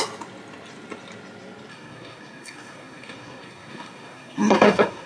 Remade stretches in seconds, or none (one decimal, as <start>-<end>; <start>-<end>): 1.7-5.1

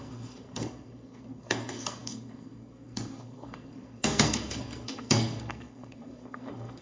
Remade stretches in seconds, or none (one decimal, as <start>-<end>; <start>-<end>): 0.0-6.8

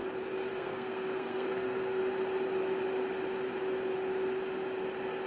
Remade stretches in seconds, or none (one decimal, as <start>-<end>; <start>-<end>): 0.5-2.0

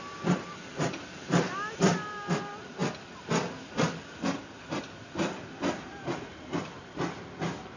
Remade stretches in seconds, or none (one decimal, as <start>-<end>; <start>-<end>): none

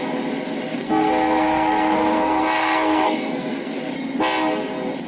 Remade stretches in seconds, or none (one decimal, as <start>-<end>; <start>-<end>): 0.7-3.8

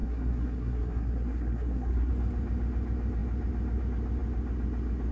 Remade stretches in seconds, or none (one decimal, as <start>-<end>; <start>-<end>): 0.0-2.1